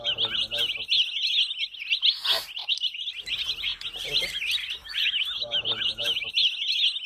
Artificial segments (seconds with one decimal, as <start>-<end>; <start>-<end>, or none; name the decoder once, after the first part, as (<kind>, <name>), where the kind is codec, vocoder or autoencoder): 4.8-6.3 (autoencoder, DAC-VAE)